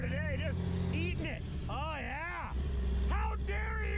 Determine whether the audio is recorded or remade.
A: recorded